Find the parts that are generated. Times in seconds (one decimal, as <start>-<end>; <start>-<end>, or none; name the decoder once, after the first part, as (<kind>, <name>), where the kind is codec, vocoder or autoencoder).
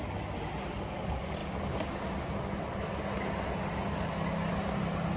none